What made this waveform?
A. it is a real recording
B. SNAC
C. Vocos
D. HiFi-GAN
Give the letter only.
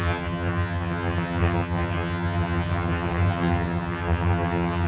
D